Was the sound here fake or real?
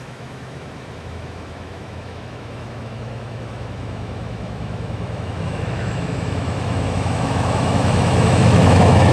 fake